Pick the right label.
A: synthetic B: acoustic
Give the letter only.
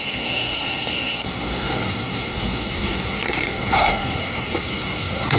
A